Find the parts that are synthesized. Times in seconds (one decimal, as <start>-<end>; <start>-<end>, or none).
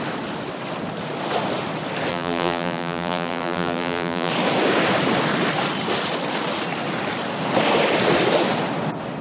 2.1-4.3